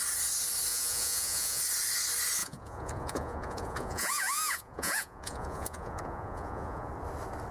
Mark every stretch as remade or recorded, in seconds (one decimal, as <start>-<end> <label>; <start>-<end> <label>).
0.0-0.7 recorded; 0.7-1.6 remade; 1.6-2.4 recorded; 2.4-6.9 remade; 6.9-7.5 recorded